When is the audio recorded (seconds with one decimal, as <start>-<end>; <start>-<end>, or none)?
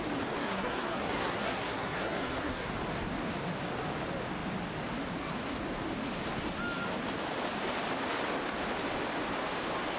0.0-0.4; 2.7-10.0